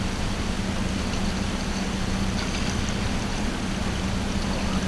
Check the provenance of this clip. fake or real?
real